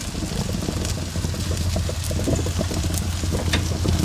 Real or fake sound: real